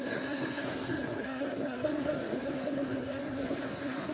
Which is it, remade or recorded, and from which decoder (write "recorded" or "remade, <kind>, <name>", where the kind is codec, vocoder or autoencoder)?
remade, codec, SNAC